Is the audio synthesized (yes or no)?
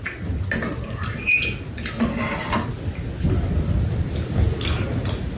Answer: no